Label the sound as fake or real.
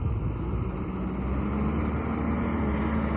real